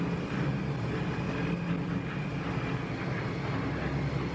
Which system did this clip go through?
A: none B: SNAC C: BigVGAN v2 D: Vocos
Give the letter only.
A